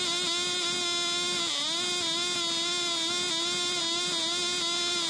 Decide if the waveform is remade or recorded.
recorded